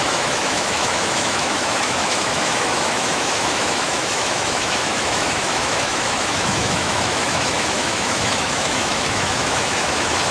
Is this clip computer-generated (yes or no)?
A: yes